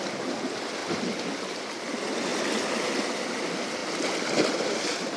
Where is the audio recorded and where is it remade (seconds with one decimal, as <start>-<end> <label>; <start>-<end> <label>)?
0.0-5.2 recorded